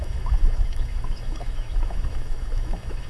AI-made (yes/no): yes